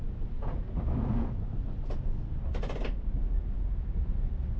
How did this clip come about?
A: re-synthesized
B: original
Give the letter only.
B